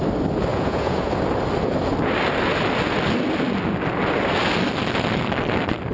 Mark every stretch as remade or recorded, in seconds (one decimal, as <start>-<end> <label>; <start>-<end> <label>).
0.0-0.5 recorded; 0.5-1.1 remade; 1.1-5.9 recorded